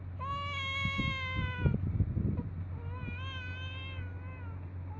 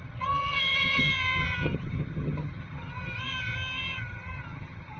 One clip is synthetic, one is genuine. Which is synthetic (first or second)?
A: second